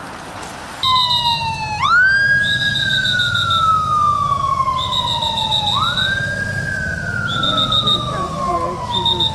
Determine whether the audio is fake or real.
real